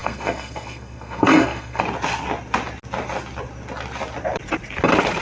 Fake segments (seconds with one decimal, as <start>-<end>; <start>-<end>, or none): 0.0-1.8